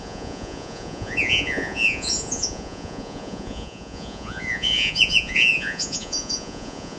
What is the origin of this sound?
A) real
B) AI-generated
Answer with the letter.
B